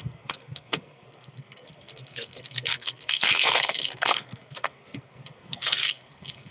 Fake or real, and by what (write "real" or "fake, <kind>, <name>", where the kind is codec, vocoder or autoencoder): fake, codec, SNAC